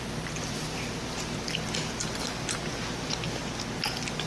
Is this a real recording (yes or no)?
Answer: yes